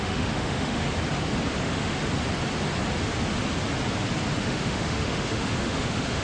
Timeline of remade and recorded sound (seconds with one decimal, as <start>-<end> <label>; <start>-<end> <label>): 0.0-0.8 remade; 0.8-1.6 recorded; 1.6-2.0 remade; 2.0-4.4 recorded; 4.4-6.2 remade

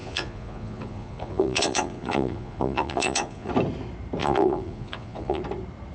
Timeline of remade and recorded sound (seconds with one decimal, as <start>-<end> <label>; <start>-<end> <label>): 0.0-3.5 remade; 3.5-4.2 recorded; 4.2-5.4 remade; 5.4-5.9 recorded

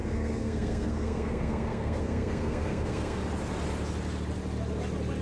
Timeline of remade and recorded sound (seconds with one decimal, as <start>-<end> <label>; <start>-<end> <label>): 0.0-3.2 remade; 3.2-5.2 recorded

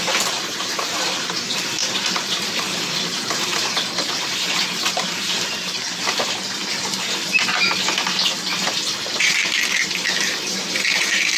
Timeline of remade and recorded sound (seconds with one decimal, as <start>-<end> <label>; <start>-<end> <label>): 0.0-6.6 remade; 6.6-10.2 recorded; 10.2-11.4 remade

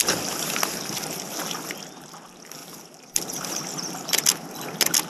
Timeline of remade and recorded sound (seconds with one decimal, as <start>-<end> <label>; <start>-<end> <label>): 0.0-5.1 recorded

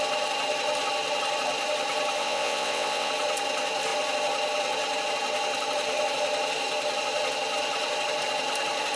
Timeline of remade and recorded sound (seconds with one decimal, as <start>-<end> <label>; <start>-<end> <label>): 0.0-2.2 recorded; 2.2-3.1 remade; 3.1-9.0 recorded